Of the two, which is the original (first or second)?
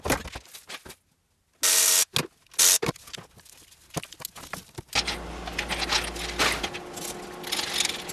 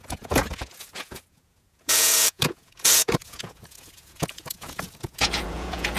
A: first